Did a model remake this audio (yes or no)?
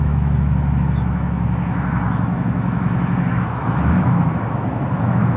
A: yes